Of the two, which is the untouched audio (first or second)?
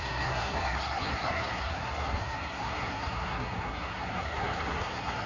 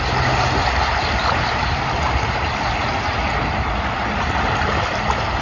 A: second